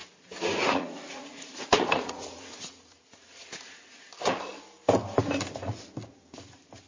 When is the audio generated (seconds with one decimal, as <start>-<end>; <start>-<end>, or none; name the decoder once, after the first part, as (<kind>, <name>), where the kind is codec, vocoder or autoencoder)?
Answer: 0.0-4.1 (vocoder, Vocos)